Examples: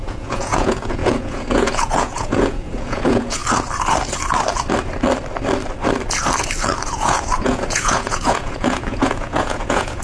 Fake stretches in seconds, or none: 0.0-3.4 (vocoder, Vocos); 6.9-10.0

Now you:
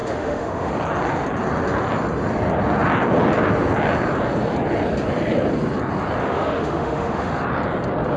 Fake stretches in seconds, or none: 0.0-0.7 (autoencoder, DAC-VAE); 6.2-7.3

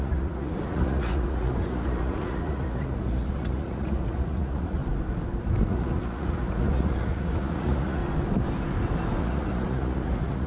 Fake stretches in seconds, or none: 0.0-4.8 (vocoder, Vocos); 5.6-8.0; 9.2-10.5

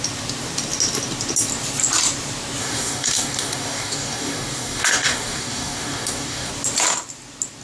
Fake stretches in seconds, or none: 2.6-6.5 (codec, DAC)